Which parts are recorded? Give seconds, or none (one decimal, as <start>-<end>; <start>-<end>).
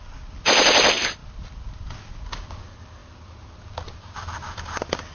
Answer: 0.0-5.1